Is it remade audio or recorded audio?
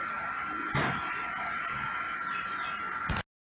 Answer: recorded